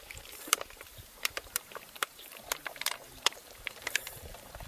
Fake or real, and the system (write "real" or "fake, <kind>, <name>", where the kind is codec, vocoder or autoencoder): fake, vocoder, BigVGAN v2